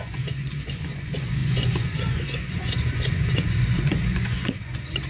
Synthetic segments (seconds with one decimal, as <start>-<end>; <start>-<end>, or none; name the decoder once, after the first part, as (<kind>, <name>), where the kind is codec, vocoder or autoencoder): 0.0-5.1 (vocoder, Vocos)